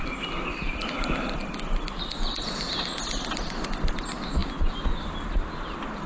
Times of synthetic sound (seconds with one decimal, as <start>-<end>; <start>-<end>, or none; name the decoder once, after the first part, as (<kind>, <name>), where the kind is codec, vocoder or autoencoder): none